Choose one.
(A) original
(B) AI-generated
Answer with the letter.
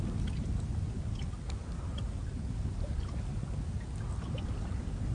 A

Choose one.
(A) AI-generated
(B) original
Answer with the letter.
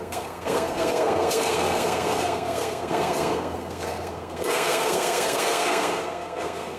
A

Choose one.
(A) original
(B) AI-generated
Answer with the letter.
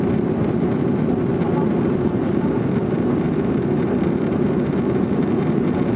A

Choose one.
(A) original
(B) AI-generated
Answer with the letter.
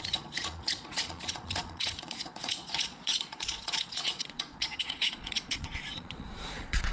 B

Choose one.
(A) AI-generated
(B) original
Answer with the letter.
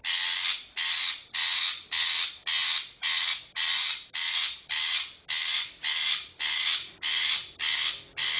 B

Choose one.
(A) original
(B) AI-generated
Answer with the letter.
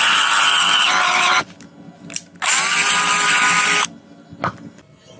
A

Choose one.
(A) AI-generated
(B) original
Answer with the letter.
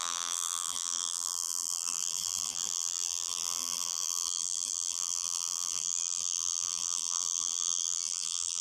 A